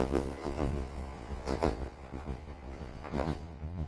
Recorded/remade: remade